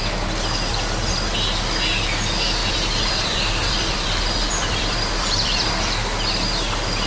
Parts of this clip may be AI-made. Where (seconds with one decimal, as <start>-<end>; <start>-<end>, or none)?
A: 2.6-5.7